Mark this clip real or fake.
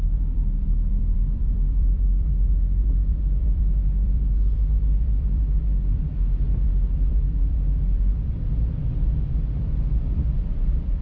fake